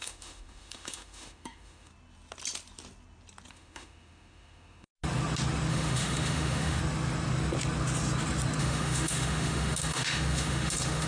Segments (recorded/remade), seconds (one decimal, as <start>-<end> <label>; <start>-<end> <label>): 0.0-1.9 remade; 1.9-3.5 recorded; 3.5-4.9 remade; 4.9-5.7 recorded; 5.7-6.8 remade; 6.8-8.6 recorded; 8.6-11.1 remade